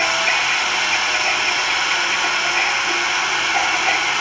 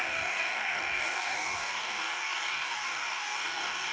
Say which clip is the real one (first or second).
first